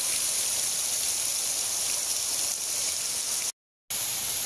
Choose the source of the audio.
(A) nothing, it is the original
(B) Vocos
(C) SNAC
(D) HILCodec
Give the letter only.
A